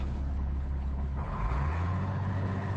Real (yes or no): no